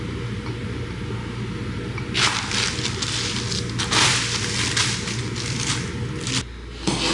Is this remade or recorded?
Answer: recorded